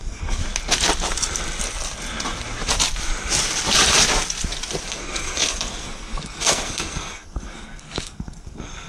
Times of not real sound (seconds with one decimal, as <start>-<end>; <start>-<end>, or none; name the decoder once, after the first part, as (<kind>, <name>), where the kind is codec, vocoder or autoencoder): 0.0-0.4 (codec, SNAC); 4.9-8.9